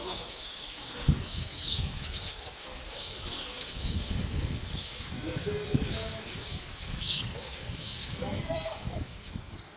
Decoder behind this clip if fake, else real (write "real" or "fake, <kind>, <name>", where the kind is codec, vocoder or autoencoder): fake, codec, SNAC